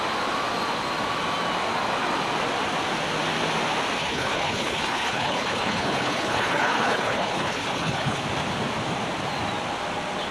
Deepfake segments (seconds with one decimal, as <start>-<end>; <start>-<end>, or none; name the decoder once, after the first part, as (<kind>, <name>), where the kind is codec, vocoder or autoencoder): 4.0-8.2 (codec, HILCodec)

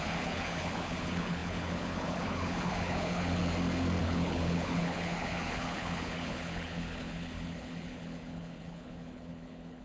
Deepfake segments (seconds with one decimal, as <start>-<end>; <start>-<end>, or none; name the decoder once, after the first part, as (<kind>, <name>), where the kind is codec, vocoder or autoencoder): 0.0-3.4 (codec, HILCodec); 4.0-9.8

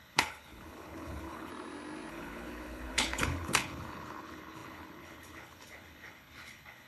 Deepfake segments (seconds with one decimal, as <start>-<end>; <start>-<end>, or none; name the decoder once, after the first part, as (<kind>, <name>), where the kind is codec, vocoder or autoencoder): 0.0-1.5 (codec, HILCodec); 2.1-6.9